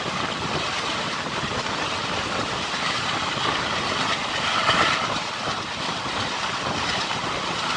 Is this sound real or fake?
real